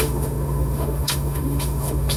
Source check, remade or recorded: remade